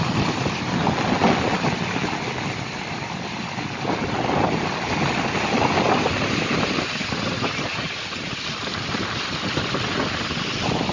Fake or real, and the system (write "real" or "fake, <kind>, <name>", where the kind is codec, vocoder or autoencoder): real